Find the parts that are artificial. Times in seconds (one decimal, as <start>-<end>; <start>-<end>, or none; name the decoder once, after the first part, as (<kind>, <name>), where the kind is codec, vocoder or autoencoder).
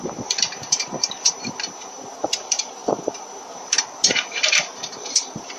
0.0-5.6 (vocoder, BigVGAN v2)